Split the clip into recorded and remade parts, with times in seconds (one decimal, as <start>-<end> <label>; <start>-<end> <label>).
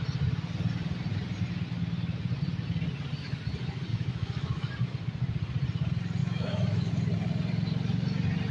0.0-3.9 recorded; 3.9-4.7 remade; 4.7-6.2 recorded; 6.2-6.9 remade; 6.9-8.5 recorded